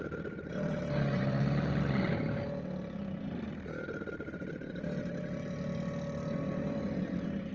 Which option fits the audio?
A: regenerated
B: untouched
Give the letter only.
B